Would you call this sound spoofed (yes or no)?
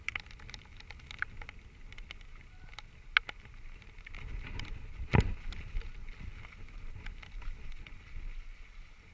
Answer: no